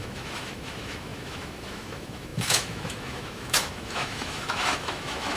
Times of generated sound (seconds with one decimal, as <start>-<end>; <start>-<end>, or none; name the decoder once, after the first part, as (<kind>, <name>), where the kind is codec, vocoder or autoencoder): 0.0-5.4 (autoencoder, DAC-VAE)